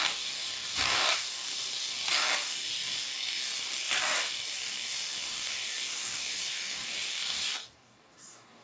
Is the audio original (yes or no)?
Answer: no